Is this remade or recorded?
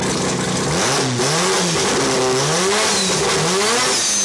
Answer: recorded